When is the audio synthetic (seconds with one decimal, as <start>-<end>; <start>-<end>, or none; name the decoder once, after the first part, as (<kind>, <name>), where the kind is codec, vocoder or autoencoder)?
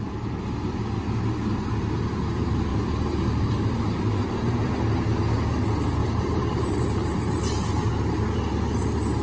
2.7-4.6 (vocoder, BigVGAN v2); 6.0-7.9